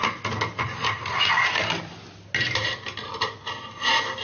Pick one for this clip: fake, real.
real